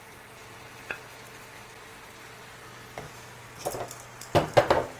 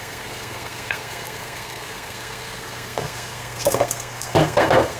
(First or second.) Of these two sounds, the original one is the first